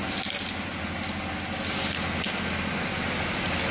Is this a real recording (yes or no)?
yes